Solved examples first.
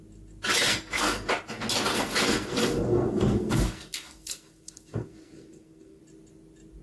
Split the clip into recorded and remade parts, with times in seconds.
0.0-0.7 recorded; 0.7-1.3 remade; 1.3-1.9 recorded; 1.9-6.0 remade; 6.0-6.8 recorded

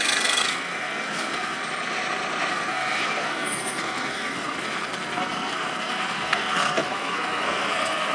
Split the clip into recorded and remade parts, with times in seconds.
0.0-1.6 remade; 1.6-2.5 recorded; 2.5-8.1 remade

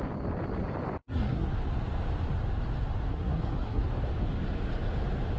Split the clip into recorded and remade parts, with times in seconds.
0.0-1.0 recorded; 1.0-1.5 remade; 1.5-3.1 recorded; 3.1-3.8 remade; 3.8-5.4 recorded

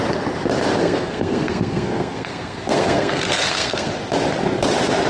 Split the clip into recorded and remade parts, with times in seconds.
0.0-0.8 recorded; 0.8-3.9 remade; 3.9-5.1 recorded